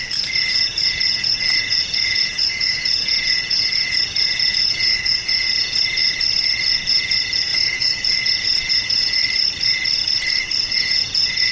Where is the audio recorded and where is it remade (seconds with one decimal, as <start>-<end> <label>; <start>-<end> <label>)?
0.0-6.0 remade; 6.0-6.7 recorded; 6.7-9.2 remade; 9.2-10.6 recorded; 10.6-11.5 remade